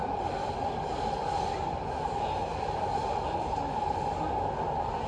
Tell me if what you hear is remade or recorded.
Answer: recorded